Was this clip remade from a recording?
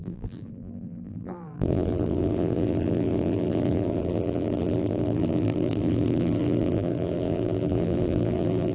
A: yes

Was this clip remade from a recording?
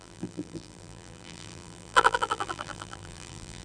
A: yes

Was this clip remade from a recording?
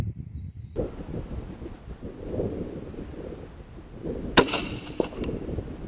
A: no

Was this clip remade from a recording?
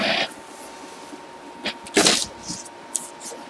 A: no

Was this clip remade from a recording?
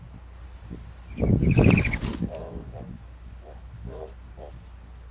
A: no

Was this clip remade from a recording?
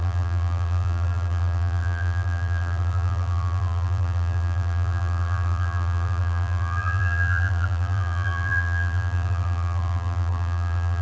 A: yes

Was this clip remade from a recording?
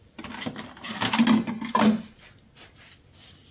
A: no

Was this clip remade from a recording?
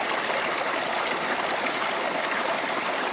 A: no